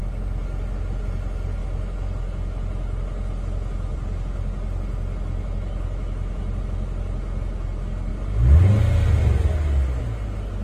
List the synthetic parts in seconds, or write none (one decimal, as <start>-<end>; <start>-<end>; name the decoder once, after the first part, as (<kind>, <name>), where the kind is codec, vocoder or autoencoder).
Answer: none